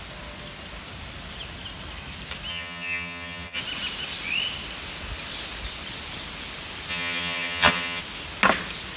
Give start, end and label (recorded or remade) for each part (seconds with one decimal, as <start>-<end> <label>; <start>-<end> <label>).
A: 0.0-2.5 recorded; 2.5-3.6 remade; 3.6-6.9 recorded; 6.9-8.0 remade; 8.0-9.0 recorded